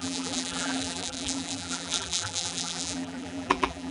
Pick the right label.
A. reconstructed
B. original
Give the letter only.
A